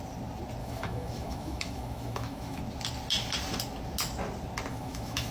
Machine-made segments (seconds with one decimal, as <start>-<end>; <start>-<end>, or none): 0.6-2.6; 4.7-5.3

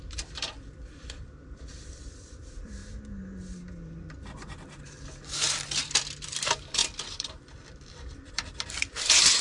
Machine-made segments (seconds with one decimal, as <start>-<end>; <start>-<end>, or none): 0.0-2.8; 4.8-5.3; 5.8-9.4

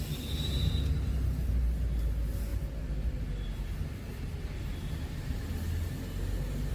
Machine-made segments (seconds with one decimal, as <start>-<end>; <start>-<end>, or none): none

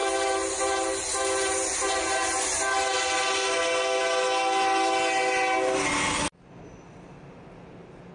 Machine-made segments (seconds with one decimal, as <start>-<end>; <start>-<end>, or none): none

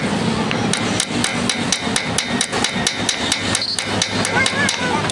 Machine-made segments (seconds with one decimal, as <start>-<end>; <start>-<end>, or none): none

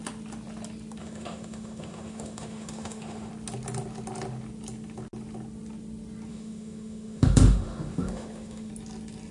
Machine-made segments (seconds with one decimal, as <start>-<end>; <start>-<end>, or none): 1.0-3.3; 6.3-8.7

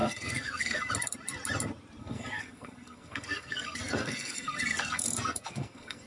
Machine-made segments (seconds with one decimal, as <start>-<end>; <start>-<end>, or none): 0.0-0.9; 2.0-6.1